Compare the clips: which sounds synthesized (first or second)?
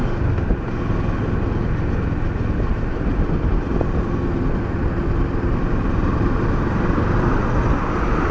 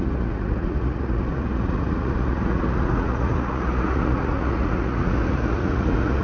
second